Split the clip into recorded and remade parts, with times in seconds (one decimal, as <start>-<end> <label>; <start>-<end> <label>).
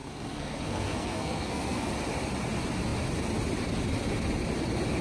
0.0-1.9 remade; 1.9-5.0 recorded